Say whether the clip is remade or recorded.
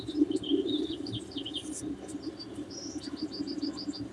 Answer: recorded